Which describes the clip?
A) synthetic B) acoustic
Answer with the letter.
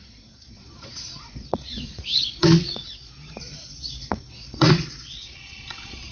A